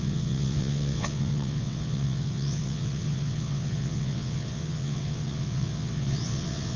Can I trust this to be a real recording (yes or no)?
no